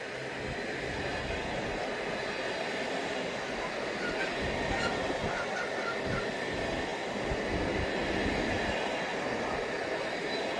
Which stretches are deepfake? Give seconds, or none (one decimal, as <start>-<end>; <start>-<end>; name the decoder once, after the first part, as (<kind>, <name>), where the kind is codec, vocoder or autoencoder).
none